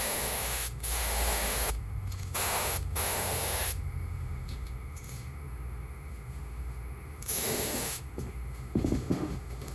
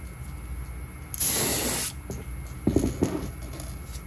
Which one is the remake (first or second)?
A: first